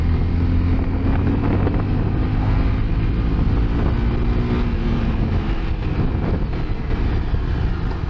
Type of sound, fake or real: real